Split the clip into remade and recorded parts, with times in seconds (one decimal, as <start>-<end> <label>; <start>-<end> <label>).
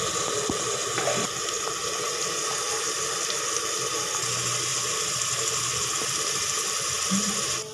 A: 0.0-0.8 recorded; 0.8-1.4 remade; 1.4-4.7 recorded; 4.7-5.6 remade; 5.6-7.7 recorded